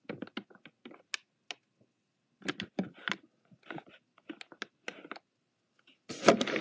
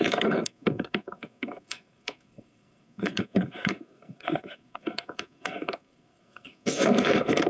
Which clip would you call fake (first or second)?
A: second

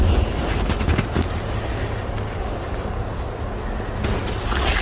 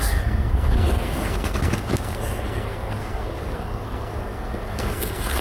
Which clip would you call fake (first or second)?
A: second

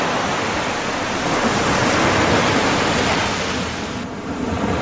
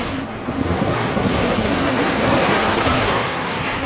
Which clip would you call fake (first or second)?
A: second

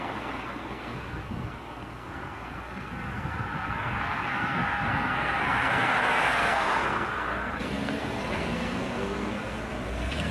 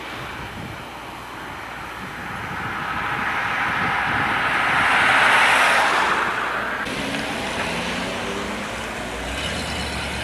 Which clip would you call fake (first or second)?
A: first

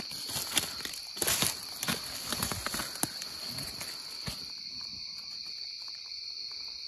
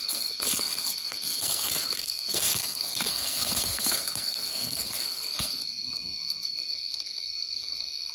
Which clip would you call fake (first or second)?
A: second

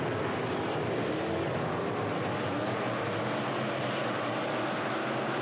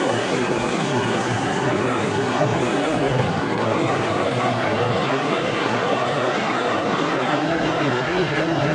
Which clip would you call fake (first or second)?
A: second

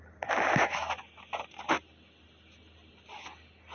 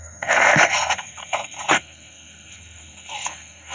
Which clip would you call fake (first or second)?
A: second